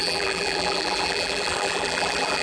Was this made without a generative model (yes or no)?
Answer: no